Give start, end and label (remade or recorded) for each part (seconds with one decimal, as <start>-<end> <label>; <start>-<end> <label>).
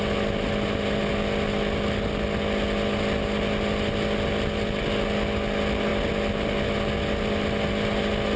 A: 0.0-8.4 recorded